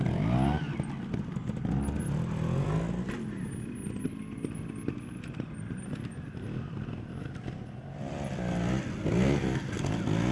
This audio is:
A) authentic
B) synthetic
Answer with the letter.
A